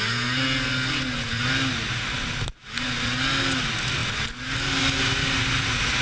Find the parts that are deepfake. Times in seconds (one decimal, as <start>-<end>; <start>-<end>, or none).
none